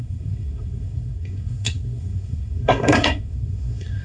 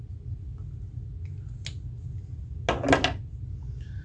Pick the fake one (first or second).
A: first